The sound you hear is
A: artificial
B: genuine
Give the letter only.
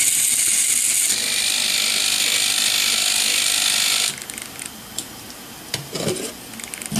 B